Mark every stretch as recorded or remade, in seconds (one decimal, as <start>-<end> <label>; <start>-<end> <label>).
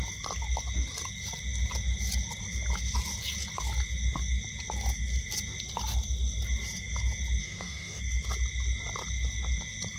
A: 0.0-7.4 recorded; 7.4-8.0 remade; 8.0-10.0 recorded